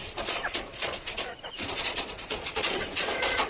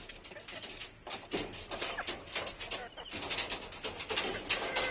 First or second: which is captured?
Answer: second